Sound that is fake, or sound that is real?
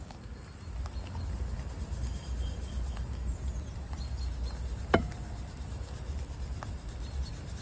real